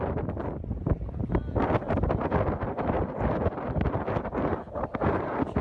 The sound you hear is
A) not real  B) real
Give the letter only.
B